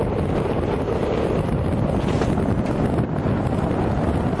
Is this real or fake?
real